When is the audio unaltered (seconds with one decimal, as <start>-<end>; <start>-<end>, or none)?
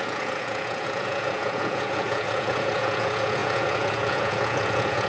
none